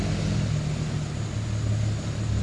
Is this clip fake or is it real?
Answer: real